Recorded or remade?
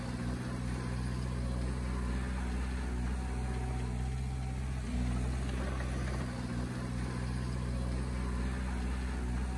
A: recorded